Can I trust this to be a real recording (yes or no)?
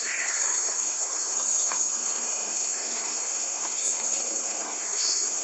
no